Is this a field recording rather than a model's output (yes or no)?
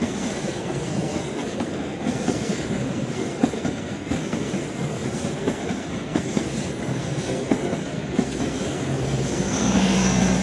no